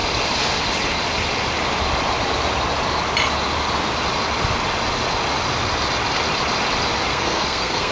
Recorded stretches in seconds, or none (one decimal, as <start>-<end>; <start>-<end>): 0.0-7.1